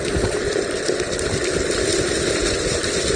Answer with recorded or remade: recorded